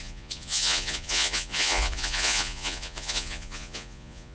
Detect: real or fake fake